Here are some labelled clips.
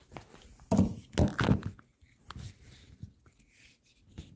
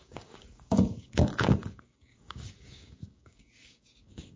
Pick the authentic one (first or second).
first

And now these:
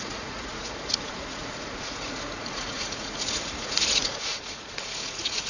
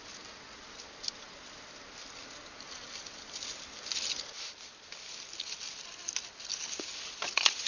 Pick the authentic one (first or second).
second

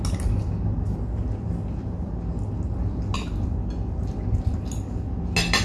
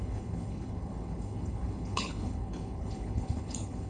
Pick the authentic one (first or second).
first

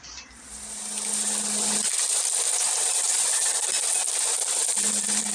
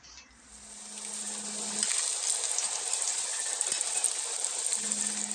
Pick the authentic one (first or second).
second